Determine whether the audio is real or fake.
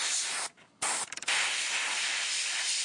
real